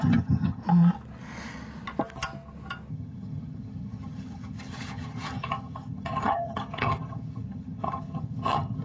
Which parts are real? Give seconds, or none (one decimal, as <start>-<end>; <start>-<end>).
0.6-2.9